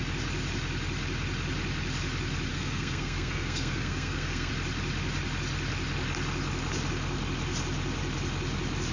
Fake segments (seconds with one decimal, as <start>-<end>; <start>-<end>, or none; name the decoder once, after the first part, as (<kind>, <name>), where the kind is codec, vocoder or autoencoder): 2.5-4.5 (codec, SNAC)